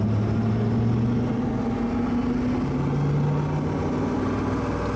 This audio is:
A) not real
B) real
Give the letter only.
B